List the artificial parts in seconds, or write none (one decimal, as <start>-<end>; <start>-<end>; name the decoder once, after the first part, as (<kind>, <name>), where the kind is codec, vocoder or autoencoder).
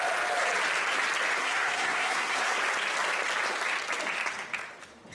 1.4-2.6 (codec, SNAC)